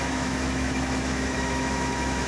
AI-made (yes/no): yes